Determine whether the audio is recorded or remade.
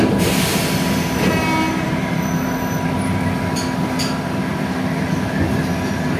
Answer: recorded